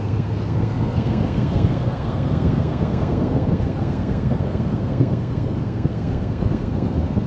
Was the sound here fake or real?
fake